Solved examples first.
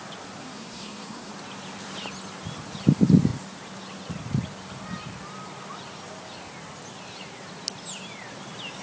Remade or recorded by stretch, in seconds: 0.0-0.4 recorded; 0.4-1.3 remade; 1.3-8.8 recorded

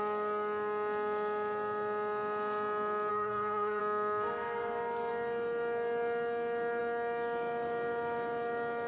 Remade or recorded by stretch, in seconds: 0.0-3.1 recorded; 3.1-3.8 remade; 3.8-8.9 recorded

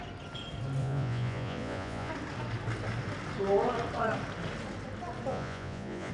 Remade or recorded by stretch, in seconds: 0.0-0.8 recorded; 0.8-2.1 remade; 2.1-5.3 recorded; 5.3-6.1 remade

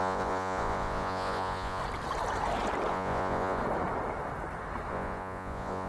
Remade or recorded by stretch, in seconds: 0.0-1.8 remade; 1.8-2.9 recorded; 2.9-3.6 remade; 3.6-4.9 recorded; 4.9-5.9 remade